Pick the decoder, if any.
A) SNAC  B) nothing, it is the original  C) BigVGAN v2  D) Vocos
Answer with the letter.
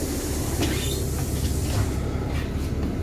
B